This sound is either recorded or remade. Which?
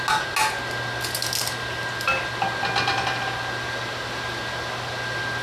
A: recorded